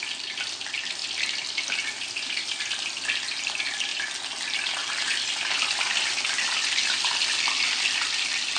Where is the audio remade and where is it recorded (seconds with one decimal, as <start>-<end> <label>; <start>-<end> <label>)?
0.0-8.6 recorded